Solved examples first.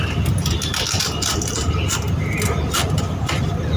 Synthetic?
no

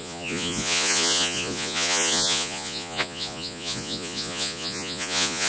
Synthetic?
yes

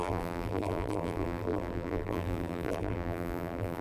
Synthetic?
yes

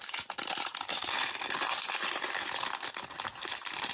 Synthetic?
no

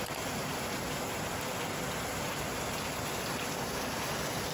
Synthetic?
no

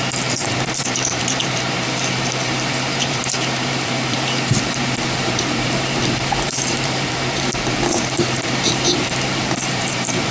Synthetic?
yes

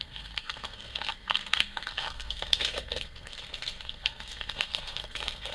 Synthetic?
yes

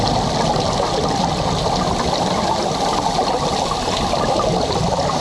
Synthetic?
no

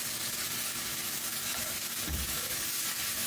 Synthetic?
yes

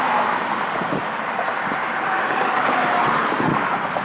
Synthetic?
no